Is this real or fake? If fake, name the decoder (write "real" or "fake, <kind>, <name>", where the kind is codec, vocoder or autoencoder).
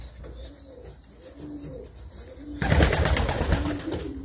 real